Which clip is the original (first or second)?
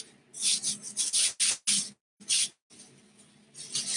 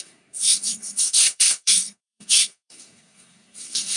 first